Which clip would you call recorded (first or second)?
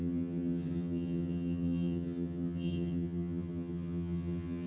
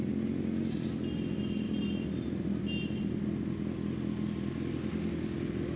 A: second